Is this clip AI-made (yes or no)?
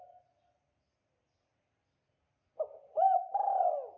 no